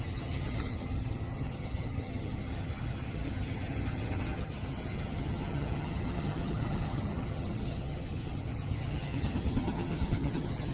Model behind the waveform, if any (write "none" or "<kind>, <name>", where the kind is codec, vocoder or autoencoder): vocoder, HiFi-GAN